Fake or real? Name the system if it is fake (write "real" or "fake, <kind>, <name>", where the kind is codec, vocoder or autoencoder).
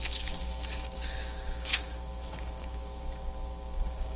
fake, codec, DAC